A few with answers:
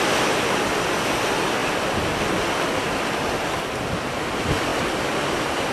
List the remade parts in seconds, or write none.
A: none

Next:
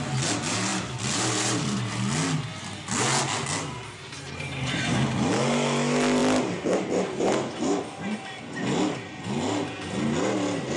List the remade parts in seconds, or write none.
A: 0.7-1.9

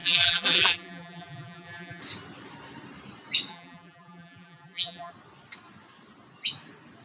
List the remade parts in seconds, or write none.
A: 0.0-2.0; 3.5-5.1

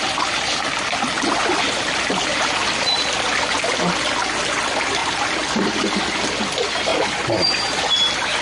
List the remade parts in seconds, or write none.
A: 2.3-3.4; 5.0-5.6

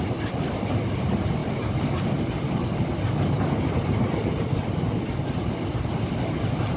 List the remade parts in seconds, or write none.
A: none

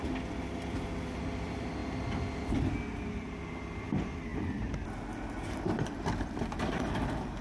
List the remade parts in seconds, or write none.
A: 0.0-1.8; 3.0-4.3; 5.5-7.4